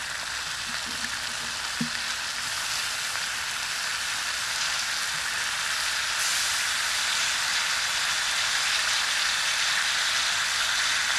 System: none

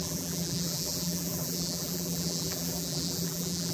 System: vocoder, BigVGAN v2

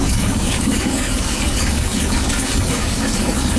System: codec, DAC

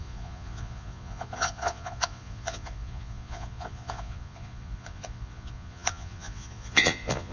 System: vocoder, Vocos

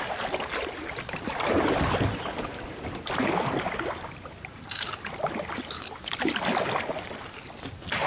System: none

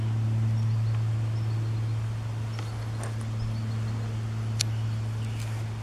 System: none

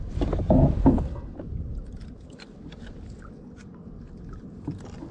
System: none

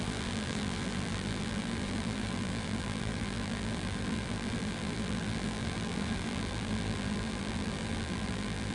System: vocoder, BigVGAN v2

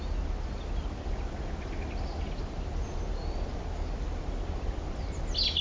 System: none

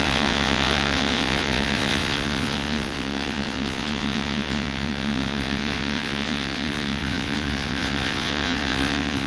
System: vocoder, WaveNeXt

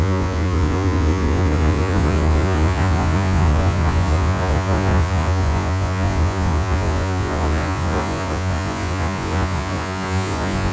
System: vocoder, Vocos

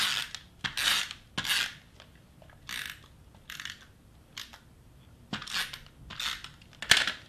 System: none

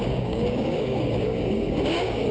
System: codec, DAC